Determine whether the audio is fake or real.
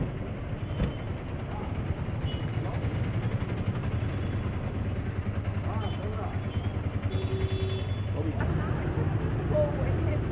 real